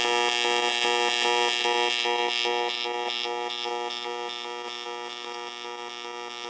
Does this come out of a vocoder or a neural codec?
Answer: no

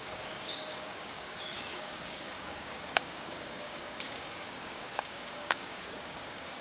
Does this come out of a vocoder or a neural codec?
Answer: yes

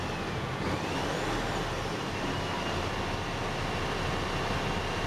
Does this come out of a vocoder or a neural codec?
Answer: no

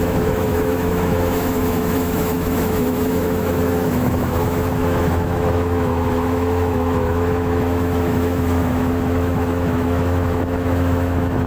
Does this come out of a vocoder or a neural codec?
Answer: yes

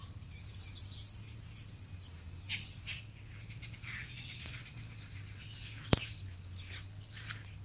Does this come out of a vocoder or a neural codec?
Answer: no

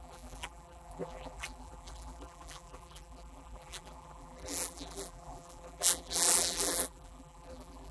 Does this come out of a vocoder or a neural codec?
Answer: yes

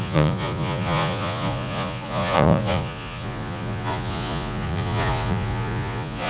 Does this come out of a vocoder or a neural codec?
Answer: yes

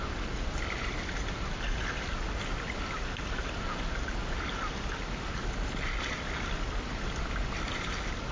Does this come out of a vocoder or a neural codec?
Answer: no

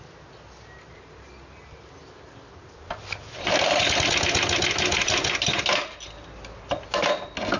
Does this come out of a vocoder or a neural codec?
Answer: no